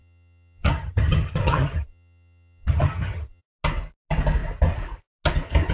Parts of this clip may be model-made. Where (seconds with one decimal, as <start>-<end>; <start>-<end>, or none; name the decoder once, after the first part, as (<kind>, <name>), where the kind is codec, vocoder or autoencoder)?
0.0-3.4 (vocoder, HiFi-GAN)